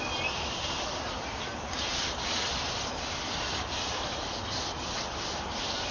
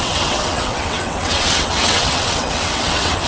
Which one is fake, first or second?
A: second